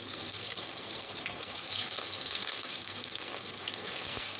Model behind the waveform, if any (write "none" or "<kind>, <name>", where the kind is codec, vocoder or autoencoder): codec, SNAC